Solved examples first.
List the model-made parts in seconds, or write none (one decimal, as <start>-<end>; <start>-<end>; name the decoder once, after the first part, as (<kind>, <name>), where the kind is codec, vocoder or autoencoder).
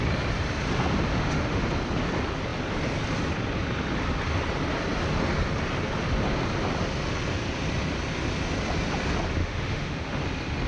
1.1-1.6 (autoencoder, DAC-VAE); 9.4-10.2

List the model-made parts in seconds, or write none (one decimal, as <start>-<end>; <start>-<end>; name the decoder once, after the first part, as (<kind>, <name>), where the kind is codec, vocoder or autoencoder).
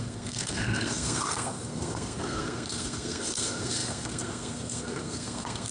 0.0-5.7 (codec, SNAC)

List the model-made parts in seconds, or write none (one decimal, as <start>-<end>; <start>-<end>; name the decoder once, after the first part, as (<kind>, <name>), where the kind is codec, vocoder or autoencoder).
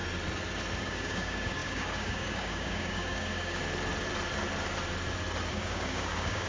0.8-3.6 (codec, DAC); 5.5-6.5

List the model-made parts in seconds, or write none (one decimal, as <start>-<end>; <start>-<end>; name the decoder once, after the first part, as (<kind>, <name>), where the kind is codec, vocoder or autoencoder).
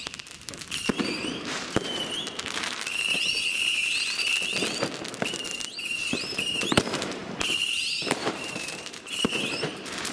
0.0-4.3 (vocoder, BigVGAN v2); 6.2-10.1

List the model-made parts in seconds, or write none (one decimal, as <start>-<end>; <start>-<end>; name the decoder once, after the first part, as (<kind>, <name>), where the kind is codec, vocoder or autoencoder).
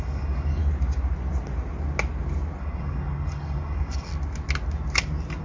0.0-0.6 (codec, DAC); 2.6-4.1